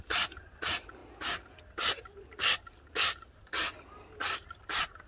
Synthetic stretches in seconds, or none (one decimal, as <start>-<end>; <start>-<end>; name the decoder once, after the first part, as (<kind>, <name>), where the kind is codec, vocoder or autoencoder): none